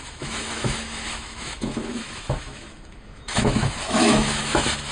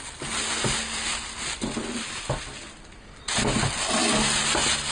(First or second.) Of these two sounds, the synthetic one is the first